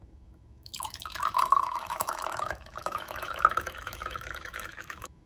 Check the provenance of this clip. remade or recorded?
remade